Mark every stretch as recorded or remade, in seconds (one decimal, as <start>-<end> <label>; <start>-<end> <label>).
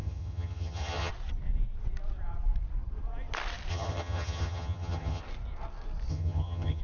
0.0-1.1 remade; 1.1-3.7 recorded; 3.7-5.2 remade; 5.2-6.1 recorded; 6.1-6.8 remade